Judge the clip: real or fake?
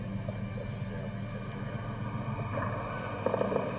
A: real